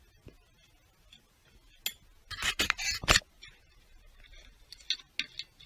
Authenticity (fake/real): real